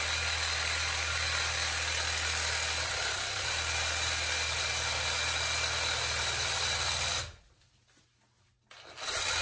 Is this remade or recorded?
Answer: recorded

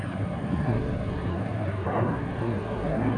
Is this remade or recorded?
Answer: remade